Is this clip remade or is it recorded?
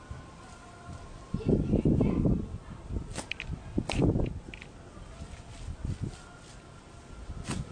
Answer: recorded